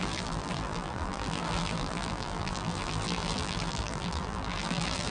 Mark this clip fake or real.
fake